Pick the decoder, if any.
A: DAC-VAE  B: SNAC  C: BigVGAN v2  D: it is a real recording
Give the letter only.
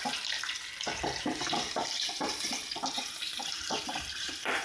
C